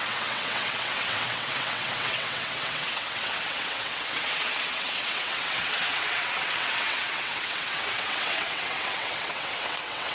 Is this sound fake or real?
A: fake